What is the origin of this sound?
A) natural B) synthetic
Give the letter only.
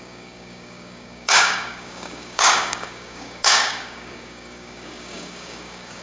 B